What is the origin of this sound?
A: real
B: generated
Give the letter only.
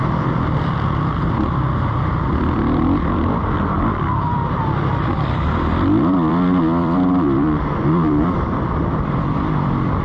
B